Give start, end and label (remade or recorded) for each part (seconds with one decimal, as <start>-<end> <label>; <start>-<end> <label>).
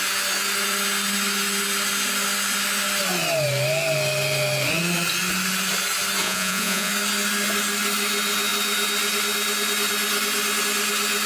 0.0-6.2 recorded; 6.2-6.9 remade; 6.9-11.3 recorded